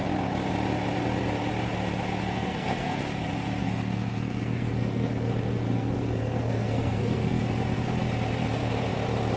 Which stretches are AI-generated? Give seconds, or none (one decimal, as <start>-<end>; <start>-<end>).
2.3-3.0; 3.6-7.4